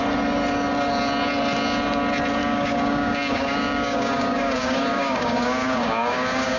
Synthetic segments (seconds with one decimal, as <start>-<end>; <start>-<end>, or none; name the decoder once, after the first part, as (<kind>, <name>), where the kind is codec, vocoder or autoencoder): 2.4-6.6 (codec, DAC)